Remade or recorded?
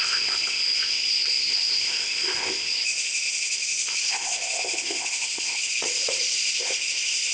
remade